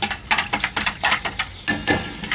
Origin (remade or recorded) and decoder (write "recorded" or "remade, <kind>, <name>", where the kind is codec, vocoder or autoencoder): recorded